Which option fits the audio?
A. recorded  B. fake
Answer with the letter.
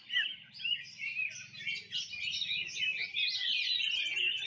A